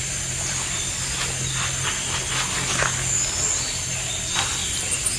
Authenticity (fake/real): real